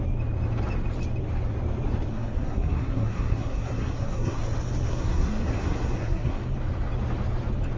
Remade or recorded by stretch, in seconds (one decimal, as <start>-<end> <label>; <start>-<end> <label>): 0.0-2.1 recorded; 2.1-4.4 remade; 4.4-4.9 recorded; 4.9-6.4 remade; 6.4-7.8 recorded